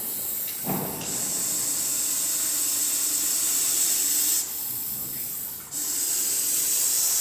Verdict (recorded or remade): recorded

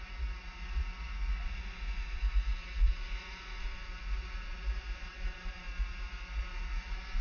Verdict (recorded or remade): remade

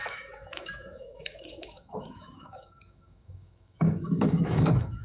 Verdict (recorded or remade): remade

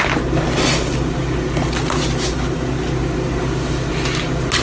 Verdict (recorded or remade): recorded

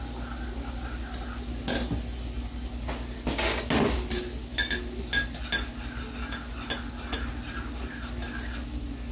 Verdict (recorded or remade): recorded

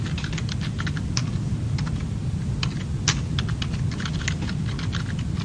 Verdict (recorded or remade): recorded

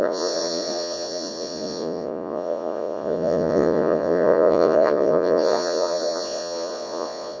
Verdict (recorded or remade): remade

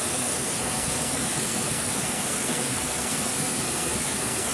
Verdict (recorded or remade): remade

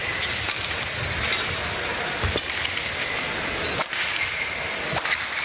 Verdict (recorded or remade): recorded